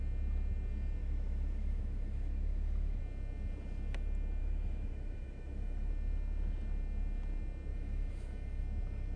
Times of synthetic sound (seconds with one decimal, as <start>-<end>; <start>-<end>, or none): 1.0-3.0; 4.4-5.9; 7.7-8.6